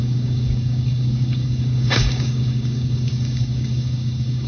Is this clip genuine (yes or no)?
no